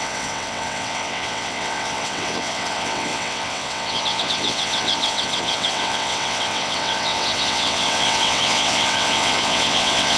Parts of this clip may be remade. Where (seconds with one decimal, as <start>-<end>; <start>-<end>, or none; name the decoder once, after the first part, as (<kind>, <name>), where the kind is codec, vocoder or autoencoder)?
0.0-10.2 (vocoder, WaveNeXt)